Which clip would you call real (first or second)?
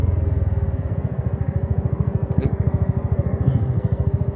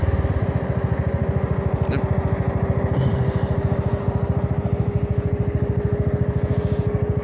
second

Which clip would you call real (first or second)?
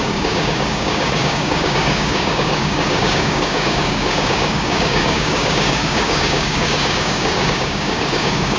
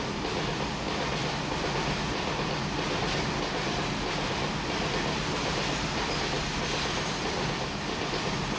second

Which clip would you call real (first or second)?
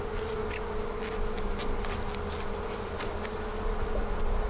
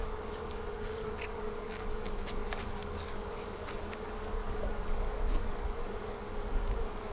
first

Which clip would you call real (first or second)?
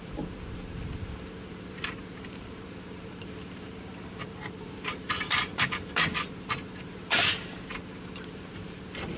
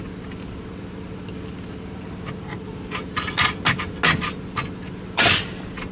second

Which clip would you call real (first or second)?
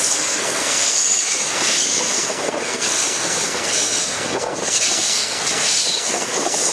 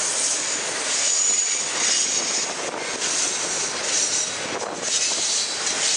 second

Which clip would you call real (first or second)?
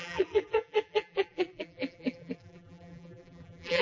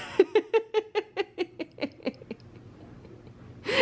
second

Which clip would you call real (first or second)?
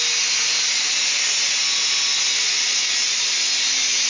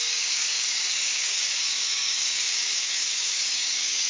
first